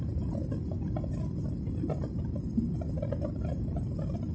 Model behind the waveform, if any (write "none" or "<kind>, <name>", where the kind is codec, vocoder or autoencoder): none